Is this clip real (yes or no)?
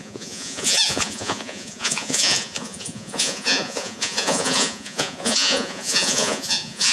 no